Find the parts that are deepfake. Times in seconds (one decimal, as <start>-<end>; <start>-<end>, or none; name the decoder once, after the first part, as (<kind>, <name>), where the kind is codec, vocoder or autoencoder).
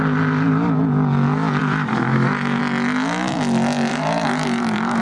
1.6-2.6 (vocoder, BigVGAN v2); 3.9-5.0